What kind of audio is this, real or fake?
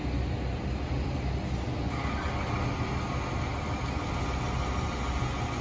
real